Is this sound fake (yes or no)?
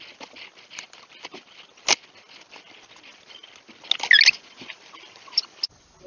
no